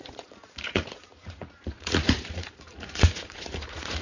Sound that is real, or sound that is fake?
fake